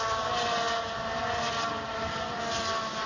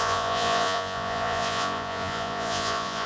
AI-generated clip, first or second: second